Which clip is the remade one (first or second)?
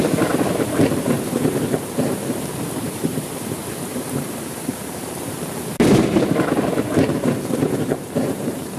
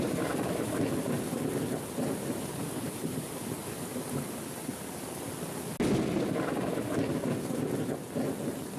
first